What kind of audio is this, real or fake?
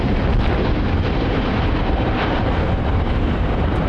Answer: fake